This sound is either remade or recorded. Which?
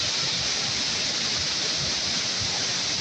recorded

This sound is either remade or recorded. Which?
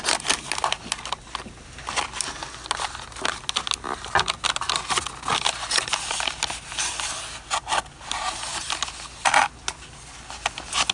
recorded